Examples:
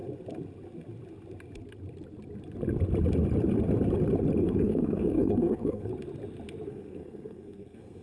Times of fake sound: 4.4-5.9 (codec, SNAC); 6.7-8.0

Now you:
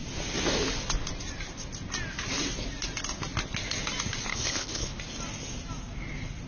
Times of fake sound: 4.3-5.0 (codec, HILCodec)